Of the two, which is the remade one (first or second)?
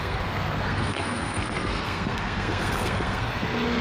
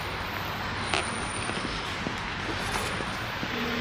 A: first